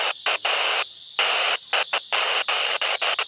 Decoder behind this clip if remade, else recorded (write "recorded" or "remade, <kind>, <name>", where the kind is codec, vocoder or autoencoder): recorded